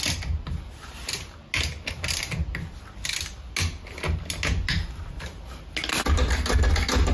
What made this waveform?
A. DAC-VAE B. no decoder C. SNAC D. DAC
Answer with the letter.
B